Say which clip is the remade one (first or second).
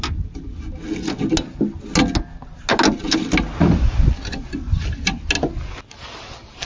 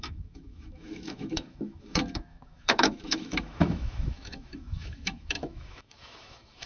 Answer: second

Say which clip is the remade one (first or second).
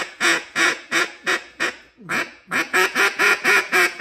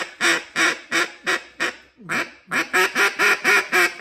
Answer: first